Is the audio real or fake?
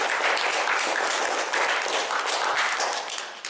real